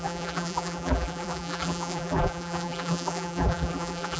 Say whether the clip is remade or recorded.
remade